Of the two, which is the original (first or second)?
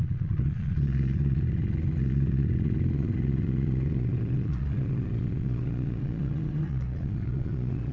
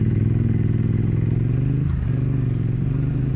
second